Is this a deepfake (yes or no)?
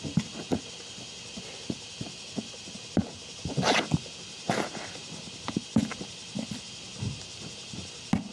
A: no